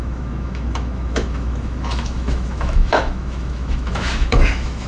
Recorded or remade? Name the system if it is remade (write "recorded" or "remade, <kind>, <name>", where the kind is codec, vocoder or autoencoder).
remade, autoencoder, DAC-VAE